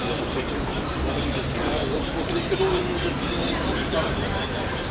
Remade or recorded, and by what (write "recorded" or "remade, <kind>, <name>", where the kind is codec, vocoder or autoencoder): remade, vocoder, BigVGAN v2